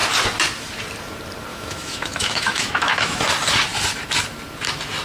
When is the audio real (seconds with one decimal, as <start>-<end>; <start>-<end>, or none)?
0.0-1.5; 3.2-5.0